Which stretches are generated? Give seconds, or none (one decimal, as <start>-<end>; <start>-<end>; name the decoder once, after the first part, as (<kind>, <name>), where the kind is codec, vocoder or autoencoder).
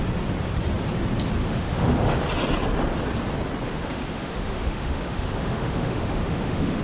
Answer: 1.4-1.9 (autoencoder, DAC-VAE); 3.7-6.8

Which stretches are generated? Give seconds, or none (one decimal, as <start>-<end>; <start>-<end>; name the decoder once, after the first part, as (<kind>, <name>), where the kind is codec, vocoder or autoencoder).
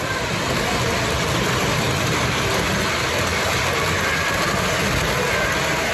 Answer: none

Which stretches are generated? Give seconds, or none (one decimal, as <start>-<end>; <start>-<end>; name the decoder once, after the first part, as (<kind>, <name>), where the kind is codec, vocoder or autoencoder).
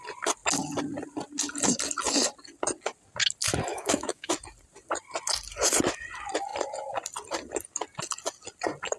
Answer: 3.7-4.3 (autoencoder, DAC-VAE)